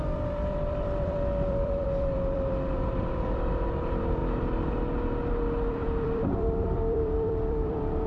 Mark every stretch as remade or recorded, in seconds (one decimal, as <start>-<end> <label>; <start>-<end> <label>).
0.0-4.2 remade; 4.2-5.3 recorded; 5.3-8.1 remade